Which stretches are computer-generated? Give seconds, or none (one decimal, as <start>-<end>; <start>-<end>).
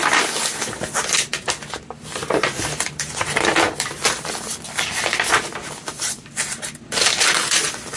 none